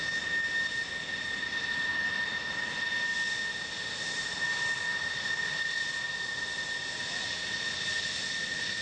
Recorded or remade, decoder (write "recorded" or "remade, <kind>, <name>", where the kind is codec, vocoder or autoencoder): recorded